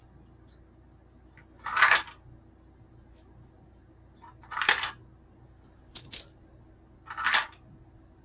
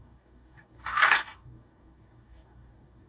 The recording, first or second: first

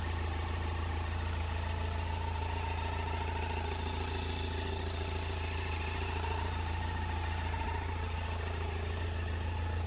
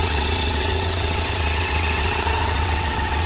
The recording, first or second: first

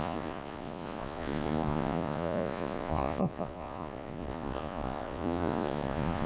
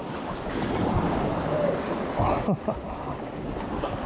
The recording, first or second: second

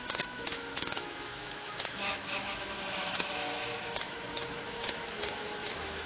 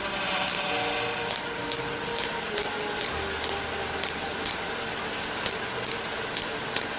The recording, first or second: second